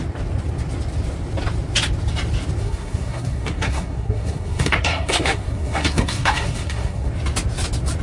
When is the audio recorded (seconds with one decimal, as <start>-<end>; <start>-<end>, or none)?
0.0-2.6; 7.1-8.0

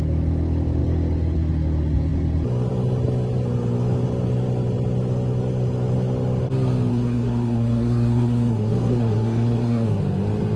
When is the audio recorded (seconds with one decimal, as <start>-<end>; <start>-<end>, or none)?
0.0-6.9; 10.0-10.6

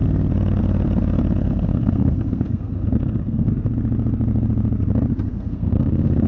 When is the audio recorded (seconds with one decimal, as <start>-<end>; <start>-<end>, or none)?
0.0-1.4; 3.5-5.3

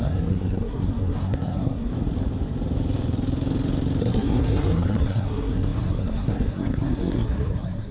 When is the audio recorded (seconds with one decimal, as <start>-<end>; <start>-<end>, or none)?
1.9-4.0